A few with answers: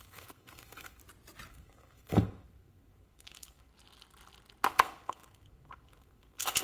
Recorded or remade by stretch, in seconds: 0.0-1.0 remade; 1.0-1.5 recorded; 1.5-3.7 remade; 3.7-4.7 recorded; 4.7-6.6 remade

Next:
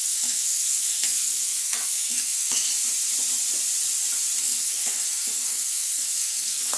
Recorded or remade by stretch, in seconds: 0.0-2.7 remade; 2.7-4.4 recorded; 4.4-6.8 remade

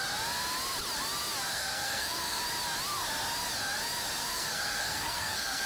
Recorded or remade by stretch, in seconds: 0.0-1.5 recorded; 1.5-2.4 remade; 2.4-4.2 recorded; 4.2-5.7 remade

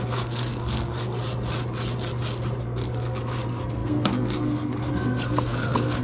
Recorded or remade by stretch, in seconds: 0.0-1.2 remade; 1.2-2.6 recorded; 2.6-6.0 remade

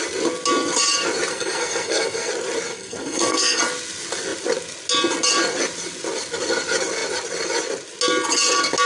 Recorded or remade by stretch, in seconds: 0.0-1.3 recorded; 1.3-2.3 remade; 2.3-2.7 recorded; 2.7-3.6 remade; 3.6-8.9 recorded

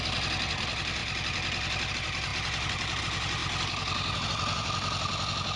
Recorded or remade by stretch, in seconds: 0.0-5.6 recorded